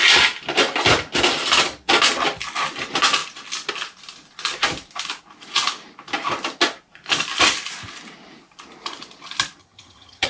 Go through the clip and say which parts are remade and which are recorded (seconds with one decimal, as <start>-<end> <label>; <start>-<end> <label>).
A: 0.0-9.6 recorded; 9.6-10.3 remade